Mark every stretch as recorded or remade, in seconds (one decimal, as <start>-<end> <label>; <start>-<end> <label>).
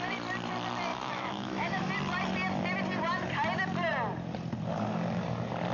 0.0-0.9 recorded; 0.9-1.9 remade; 1.9-5.7 recorded